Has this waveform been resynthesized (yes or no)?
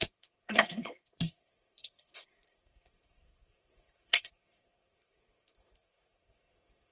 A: yes